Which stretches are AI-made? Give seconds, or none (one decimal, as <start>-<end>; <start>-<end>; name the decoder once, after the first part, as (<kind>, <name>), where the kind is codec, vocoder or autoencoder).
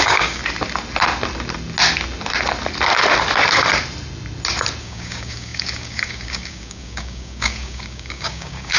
0.0-0.4 (codec, DAC); 4.8-8.8